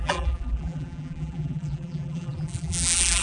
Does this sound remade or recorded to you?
remade